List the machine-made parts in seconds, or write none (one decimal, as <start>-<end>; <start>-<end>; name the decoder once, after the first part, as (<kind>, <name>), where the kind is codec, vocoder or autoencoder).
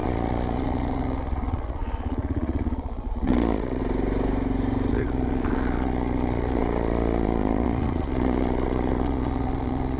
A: 0.0-3.8 (vocoder, Vocos); 4.9-10.0